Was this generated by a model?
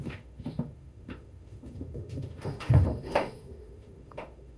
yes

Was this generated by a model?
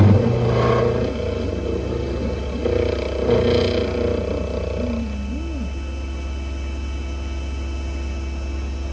no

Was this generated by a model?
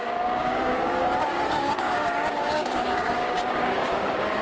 yes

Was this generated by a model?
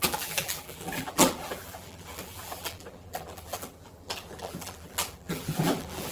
yes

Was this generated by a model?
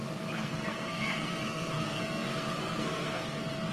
yes